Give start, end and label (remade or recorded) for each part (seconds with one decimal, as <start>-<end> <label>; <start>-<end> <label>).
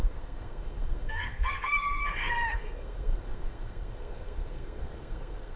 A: 0.0-5.6 remade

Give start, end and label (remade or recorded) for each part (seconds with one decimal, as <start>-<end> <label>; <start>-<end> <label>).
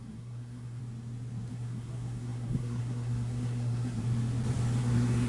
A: 0.0-0.8 remade; 0.8-1.5 recorded; 1.5-4.0 remade; 4.0-4.8 recorded; 4.8-5.3 remade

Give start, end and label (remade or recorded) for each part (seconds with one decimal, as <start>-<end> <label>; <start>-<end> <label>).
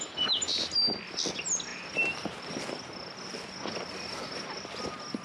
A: 0.0-5.2 recorded